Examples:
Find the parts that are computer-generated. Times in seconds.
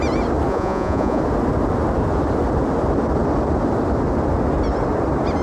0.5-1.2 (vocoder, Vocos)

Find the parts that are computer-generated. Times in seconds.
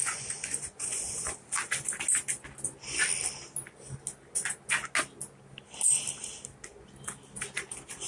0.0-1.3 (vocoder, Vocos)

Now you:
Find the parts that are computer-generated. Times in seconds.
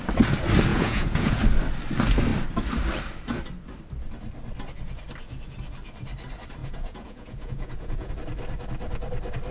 0.7-1.4 (vocoder, Vocos); 6.6-8.1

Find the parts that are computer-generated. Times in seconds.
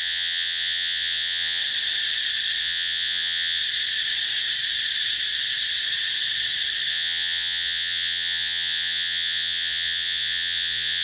0.0-1.6 (vocoder, Vocos); 2.6-3.6; 6.9-11.0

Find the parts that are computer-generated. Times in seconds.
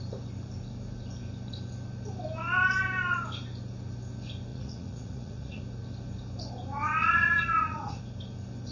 4.5-5.6 (vocoder, Vocos); 7.0-8.0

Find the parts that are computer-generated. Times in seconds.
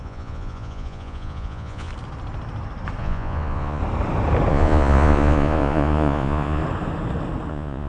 0.0-1.9 (vocoder, Vocos); 3.0-3.8; 4.5-6.6; 7.5-7.9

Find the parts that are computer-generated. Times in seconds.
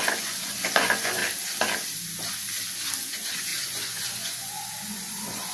0.0-1.2 (vocoder, Vocos); 3.0-5.5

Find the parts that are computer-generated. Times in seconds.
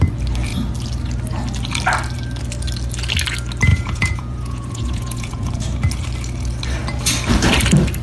3.7-5.5 (vocoder, Vocos)